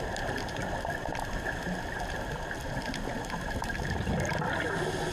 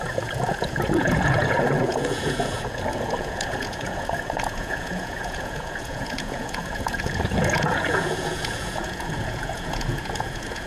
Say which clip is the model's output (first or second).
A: second